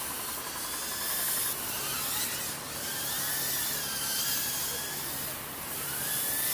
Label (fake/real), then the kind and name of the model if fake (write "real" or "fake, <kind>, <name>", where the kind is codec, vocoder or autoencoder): real